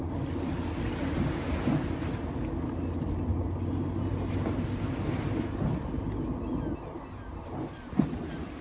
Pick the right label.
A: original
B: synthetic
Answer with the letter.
A